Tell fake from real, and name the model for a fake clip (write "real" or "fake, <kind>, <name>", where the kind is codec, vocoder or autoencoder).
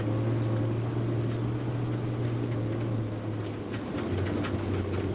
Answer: real